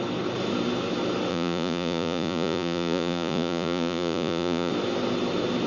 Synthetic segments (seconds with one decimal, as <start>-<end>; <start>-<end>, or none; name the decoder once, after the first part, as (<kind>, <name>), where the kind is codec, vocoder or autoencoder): 1.3-4.7 (vocoder, Vocos)